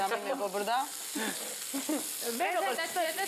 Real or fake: real